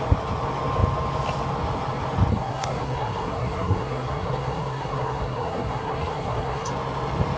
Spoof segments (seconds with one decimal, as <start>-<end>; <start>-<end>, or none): 2.3-6.7